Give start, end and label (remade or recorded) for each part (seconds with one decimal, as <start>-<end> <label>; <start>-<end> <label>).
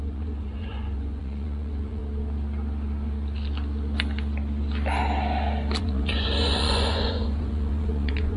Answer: 0.0-2.0 remade; 2.0-5.8 recorded; 5.8-8.4 remade